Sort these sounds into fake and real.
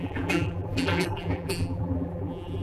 fake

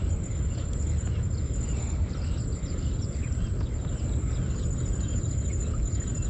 real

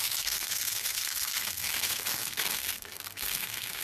fake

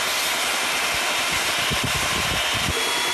real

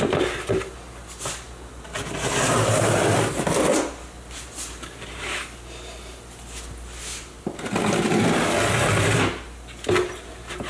real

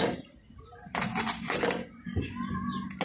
real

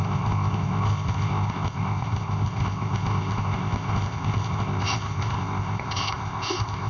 fake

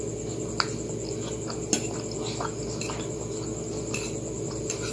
real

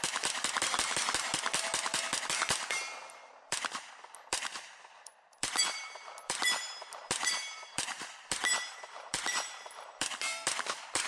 fake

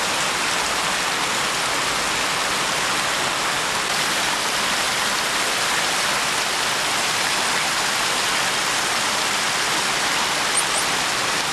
real